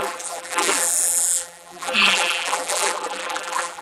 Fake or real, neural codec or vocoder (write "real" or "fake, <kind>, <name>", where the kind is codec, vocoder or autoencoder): fake, vocoder, BigVGAN v2